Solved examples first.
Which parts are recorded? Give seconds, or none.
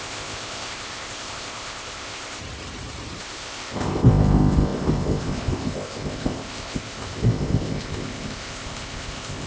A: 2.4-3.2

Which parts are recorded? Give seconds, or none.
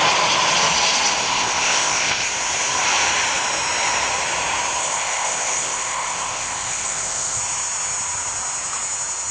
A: 0.0-1.2; 2.3-4.8; 7.4-9.3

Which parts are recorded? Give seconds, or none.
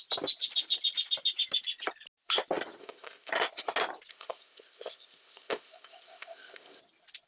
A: 0.0-2.8; 3.3-4.1; 6.8-7.3